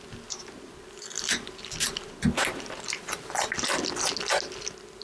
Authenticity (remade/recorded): recorded